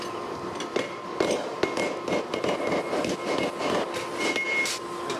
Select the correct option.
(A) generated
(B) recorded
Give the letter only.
B